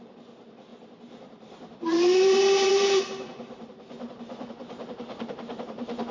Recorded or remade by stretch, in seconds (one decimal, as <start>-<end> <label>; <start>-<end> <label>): 0.0-6.1 remade